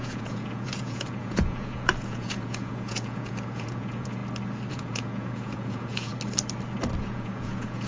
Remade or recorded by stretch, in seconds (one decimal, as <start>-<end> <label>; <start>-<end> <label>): 0.0-4.2 remade; 4.2-4.7 recorded; 4.7-6.1 remade; 6.1-7.0 recorded; 7.0-7.9 remade